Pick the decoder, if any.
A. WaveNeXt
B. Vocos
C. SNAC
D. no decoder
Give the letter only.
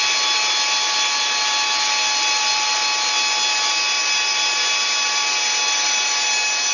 D